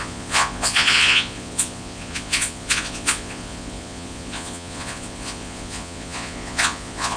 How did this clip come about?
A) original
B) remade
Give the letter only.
B